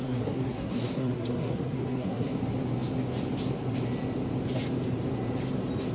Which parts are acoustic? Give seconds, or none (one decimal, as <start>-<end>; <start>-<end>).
2.3-5.9